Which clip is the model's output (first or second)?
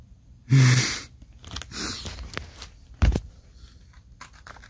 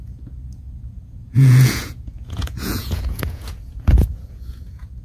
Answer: second